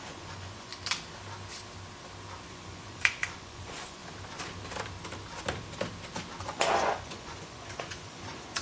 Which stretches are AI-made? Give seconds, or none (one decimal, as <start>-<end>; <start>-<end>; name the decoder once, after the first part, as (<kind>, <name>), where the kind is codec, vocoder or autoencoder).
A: 0.0-0.7 (vocoder, Vocos); 2.5-4.0; 6.4-8.6